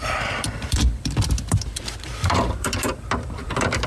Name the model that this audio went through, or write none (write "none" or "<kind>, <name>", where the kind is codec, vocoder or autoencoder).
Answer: vocoder, BigVGAN v2